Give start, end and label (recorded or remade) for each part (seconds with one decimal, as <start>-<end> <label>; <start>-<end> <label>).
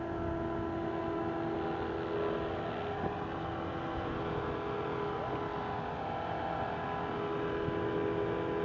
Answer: 0.0-8.6 recorded